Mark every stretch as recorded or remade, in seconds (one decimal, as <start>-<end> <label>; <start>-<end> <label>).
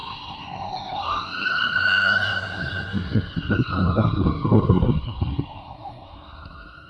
0.0-6.9 remade